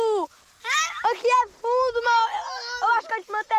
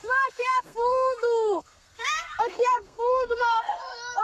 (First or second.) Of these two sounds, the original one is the first